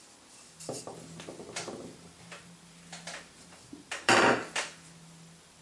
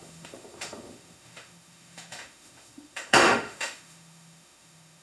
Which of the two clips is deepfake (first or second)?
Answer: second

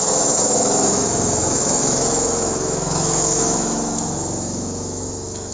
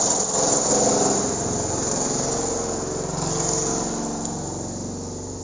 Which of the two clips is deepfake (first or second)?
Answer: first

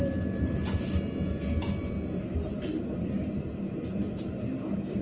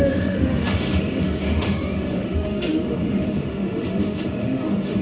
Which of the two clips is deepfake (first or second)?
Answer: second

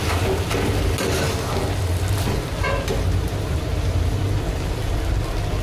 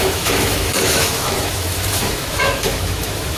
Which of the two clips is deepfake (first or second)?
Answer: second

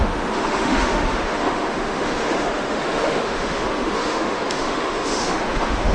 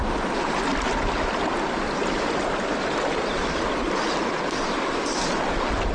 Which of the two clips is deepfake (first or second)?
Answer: first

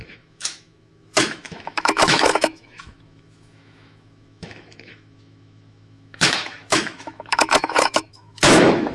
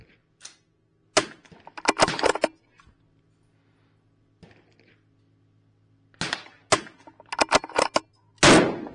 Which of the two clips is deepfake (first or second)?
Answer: first